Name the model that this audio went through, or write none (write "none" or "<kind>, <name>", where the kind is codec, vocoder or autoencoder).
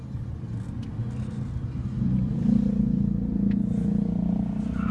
none